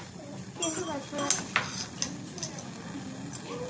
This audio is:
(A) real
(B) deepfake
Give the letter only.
A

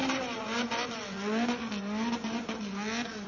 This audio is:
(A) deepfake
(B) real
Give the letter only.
B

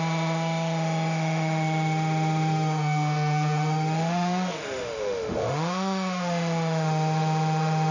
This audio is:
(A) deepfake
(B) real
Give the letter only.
A